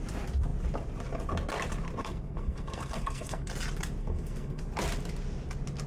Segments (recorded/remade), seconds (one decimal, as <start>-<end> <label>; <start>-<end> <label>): 0.0-2.0 recorded; 2.0-3.5 remade; 3.5-4.0 recorded; 4.0-4.6 remade; 4.6-5.9 recorded